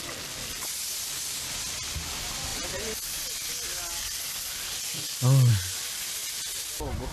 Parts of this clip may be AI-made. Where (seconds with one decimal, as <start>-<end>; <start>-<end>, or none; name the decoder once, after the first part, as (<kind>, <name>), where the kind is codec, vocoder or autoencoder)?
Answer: none